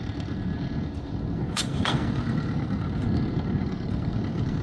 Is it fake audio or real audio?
fake